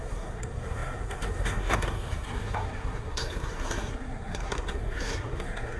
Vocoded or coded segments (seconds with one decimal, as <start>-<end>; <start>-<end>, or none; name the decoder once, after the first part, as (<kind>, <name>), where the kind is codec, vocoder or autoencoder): 0.0-5.8 (codec, SNAC)